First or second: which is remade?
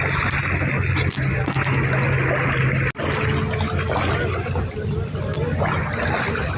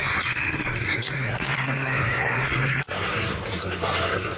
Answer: second